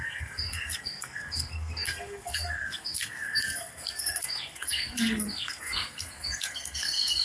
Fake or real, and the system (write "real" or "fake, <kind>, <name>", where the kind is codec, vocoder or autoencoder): fake, codec, SNAC